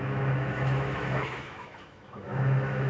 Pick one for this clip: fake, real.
fake